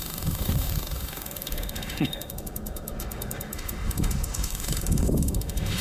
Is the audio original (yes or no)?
no